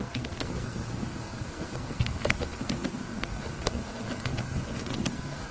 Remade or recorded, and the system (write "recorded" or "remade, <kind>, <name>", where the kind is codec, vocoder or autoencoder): remade, codec, SNAC